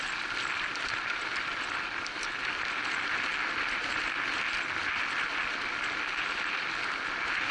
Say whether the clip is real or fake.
real